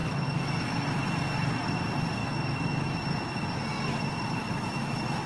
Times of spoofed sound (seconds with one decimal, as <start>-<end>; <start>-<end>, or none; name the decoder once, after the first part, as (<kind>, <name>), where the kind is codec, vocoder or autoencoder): 0.0-0.9 (autoencoder, DAC-VAE); 2.2-3.6; 4.4-5.3